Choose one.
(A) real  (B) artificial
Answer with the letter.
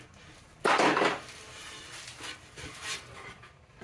A